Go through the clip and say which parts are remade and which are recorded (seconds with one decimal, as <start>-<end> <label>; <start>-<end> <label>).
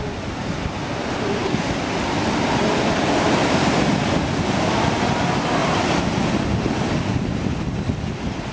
0.0-8.5 recorded